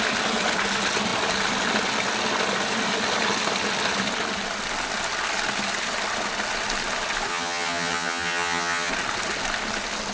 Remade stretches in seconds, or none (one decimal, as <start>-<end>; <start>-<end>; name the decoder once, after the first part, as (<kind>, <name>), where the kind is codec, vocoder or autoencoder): 7.3-8.9 (vocoder, HiFi-GAN)